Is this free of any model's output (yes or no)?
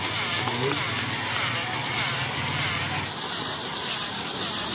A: yes